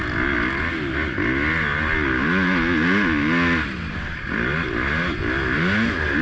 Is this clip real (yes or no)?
yes